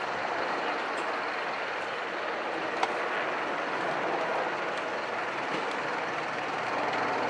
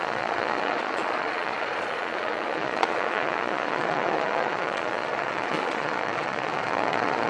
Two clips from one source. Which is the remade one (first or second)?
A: second